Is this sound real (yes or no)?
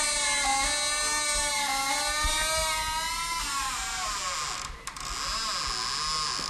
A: yes